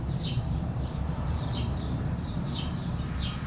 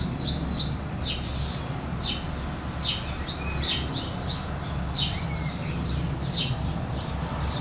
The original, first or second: second